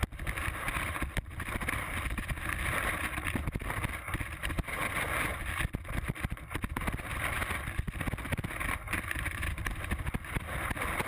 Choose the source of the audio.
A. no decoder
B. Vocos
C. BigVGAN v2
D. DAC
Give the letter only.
C